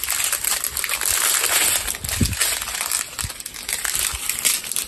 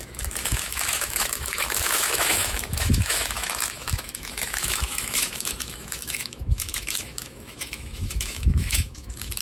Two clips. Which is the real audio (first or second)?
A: first